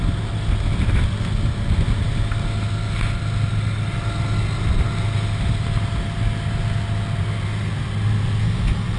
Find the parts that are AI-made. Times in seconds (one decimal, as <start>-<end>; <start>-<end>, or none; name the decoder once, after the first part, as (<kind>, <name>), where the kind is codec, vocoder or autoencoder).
none